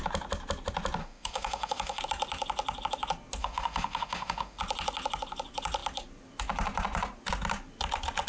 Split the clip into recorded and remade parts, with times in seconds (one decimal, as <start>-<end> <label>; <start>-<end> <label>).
0.0-1.0 recorded; 1.0-2.0 remade; 2.0-3.4 recorded; 3.4-4.6 remade; 4.6-8.3 recorded